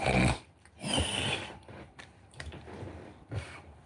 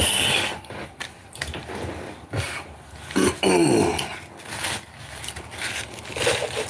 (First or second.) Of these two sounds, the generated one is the first